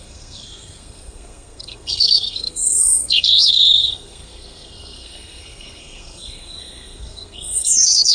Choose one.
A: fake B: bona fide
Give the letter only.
A